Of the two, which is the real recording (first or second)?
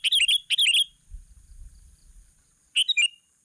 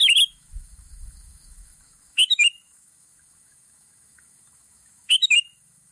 first